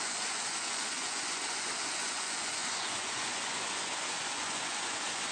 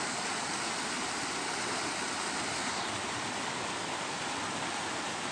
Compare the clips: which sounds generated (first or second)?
first